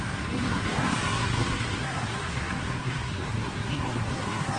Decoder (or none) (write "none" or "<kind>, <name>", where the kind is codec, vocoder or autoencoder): codec, SNAC